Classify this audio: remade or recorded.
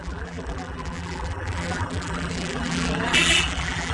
remade